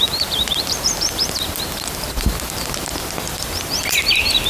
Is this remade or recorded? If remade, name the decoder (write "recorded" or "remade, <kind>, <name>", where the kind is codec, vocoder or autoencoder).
remade, vocoder, BigVGAN v2